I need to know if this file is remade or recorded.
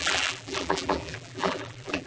remade